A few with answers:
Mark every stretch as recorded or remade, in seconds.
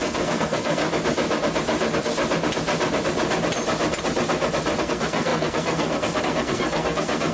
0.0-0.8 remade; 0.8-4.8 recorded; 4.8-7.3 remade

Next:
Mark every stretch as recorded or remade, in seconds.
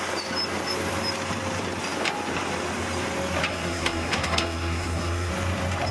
0.0-3.5 recorded; 3.5-5.3 remade; 5.3-5.9 recorded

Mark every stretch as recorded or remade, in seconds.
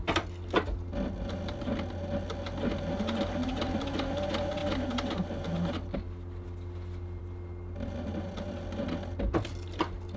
0.0-10.2 recorded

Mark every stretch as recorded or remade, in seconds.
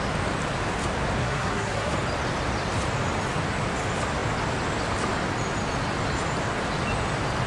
0.0-1.2 recorded; 1.2-1.9 remade; 1.9-7.5 recorded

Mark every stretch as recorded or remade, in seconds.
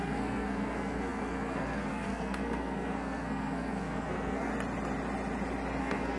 0.0-4.5 remade; 4.5-5.8 recorded; 5.8-6.2 remade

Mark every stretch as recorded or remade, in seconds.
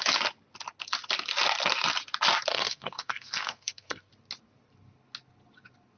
0.0-2.5 recorded; 2.5-4.1 remade; 4.1-6.0 recorded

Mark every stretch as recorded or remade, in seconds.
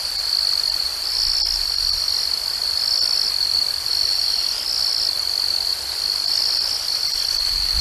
0.0-7.8 recorded